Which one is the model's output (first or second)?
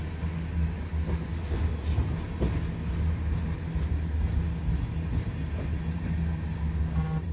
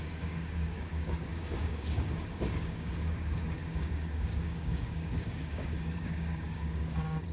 second